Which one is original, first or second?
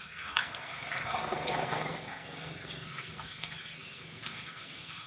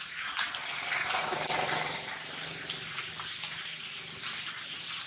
second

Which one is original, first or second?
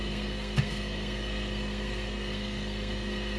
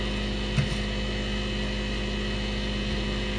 second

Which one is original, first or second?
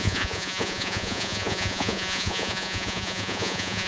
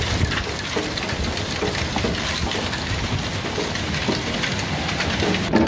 second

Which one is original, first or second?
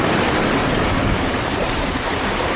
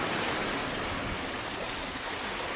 second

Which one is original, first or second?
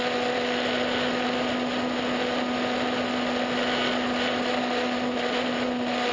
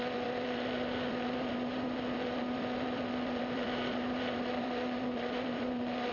first